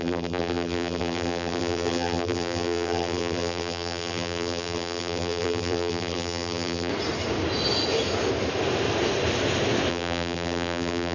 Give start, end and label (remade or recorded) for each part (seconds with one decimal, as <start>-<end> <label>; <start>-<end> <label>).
0.0-6.9 remade; 6.9-9.9 recorded; 9.9-11.1 remade